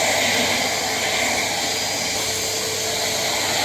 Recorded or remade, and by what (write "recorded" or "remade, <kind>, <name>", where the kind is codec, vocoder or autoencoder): recorded